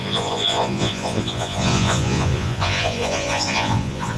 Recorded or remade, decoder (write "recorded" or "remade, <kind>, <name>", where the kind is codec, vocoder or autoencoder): remade, vocoder, Vocos